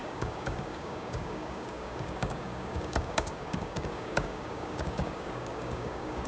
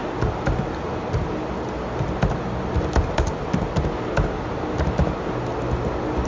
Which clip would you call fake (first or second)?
first